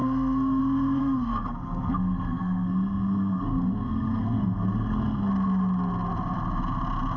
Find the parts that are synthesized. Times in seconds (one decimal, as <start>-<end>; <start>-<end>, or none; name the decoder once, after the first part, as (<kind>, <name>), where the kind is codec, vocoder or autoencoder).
0.0-0.6 (codec, SNAC); 1.0-5.3